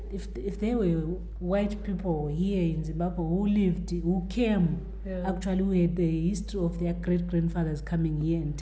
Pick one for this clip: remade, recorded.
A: recorded